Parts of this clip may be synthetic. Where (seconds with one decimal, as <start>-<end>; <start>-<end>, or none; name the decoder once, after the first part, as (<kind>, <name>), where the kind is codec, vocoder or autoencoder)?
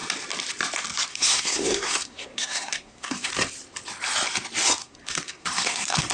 1.1-3.3 (codec, SNAC); 4.8-6.1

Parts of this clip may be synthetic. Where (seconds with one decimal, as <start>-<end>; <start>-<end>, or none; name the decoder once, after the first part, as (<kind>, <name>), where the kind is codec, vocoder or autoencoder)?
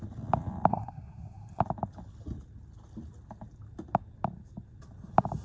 0.7-1.6 (codec, SNAC)